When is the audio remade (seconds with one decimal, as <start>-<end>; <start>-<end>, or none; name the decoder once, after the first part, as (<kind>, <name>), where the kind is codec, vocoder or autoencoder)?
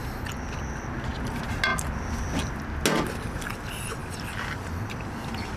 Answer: none